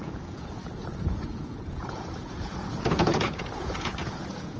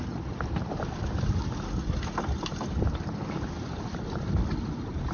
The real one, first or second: second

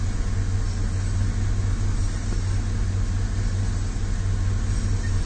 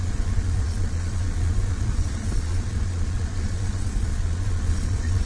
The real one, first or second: first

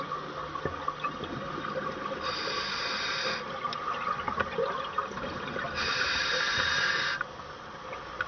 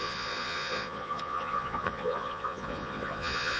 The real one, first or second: first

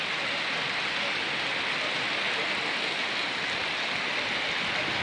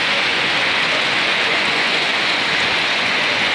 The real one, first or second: first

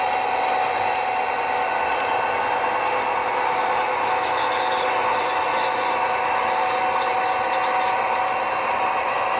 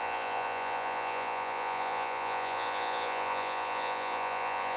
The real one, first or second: first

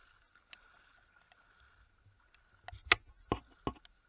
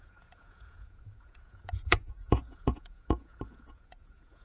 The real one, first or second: first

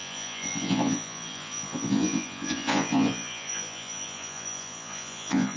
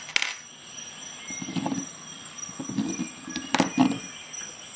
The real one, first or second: second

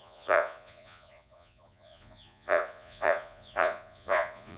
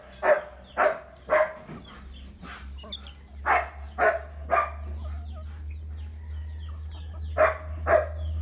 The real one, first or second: second